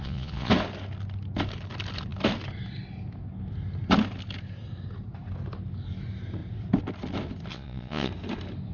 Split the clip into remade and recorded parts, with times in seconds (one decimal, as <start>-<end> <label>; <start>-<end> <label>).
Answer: 0.0-0.5 remade; 0.5-7.5 recorded; 7.5-8.1 remade; 8.1-8.7 recorded